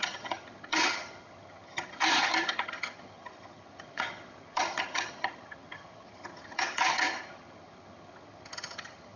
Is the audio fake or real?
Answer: fake